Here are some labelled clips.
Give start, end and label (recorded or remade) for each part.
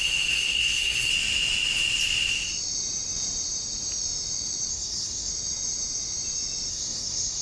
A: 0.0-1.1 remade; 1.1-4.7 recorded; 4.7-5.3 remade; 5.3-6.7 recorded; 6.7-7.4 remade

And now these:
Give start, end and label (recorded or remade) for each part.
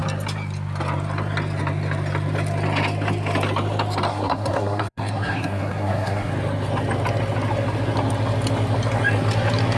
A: 0.0-4.1 recorded; 4.1-6.3 remade; 6.3-9.8 recorded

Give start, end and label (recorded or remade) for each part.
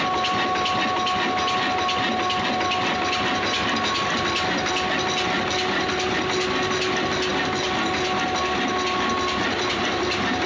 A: 0.0-10.5 recorded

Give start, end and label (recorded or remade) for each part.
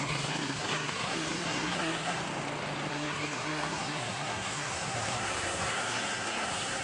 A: 0.0-2.2 remade; 2.2-2.9 recorded; 2.9-6.8 remade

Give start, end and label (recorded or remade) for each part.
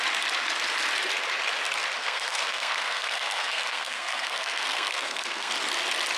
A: 0.0-2.0 recorded; 2.0-5.5 remade; 5.5-6.2 recorded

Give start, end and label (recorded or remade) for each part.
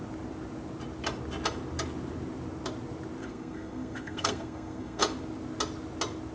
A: 0.0-3.2 recorded; 3.2-5.0 remade; 5.0-6.3 recorded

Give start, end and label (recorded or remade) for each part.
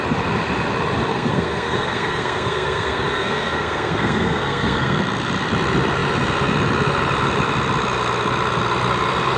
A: 0.0-1.1 recorded; 1.1-5.0 remade; 5.0-9.4 recorded